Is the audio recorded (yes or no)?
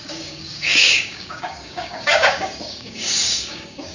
no